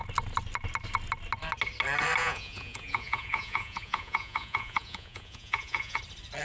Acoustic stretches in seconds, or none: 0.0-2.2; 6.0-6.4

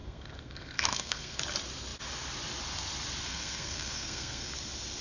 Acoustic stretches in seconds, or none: 1.4-3.3; 4.5-5.0

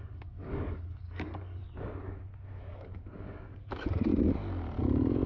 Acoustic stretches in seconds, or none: 1.6-2.7; 4.1-4.8

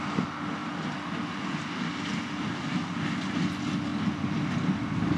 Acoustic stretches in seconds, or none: 0.0-5.2

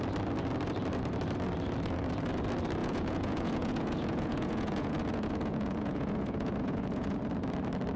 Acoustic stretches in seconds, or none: 0.0-2.8; 7.2-8.0